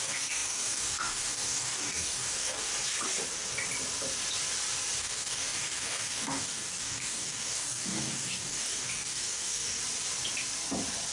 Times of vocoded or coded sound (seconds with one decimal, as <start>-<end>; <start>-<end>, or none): 0.0-2.7; 5.0-9.8